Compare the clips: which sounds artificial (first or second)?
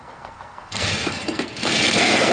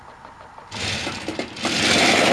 first